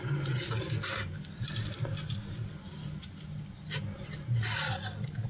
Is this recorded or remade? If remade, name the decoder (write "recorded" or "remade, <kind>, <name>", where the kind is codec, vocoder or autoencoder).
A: recorded